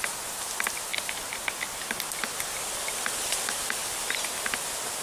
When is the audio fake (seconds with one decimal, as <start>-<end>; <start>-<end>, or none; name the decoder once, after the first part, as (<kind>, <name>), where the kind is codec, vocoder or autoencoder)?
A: none